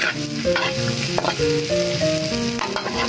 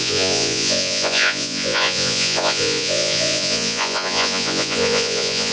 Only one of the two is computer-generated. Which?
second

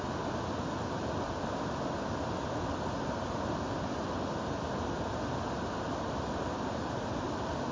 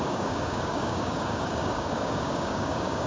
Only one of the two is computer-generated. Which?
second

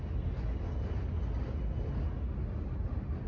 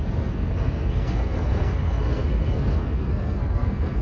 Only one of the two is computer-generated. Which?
second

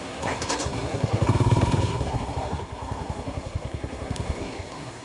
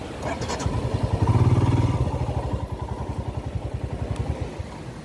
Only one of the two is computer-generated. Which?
first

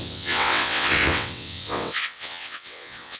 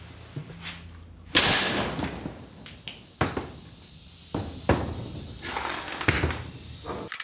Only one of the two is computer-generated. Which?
first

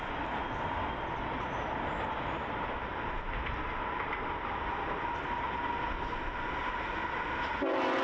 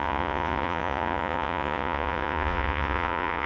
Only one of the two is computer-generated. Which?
second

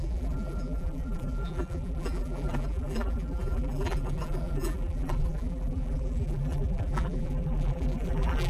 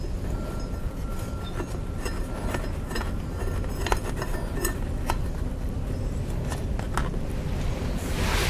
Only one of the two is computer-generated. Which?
first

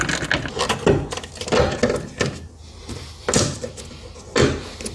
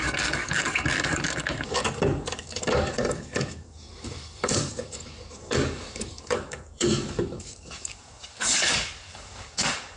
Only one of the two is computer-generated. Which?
second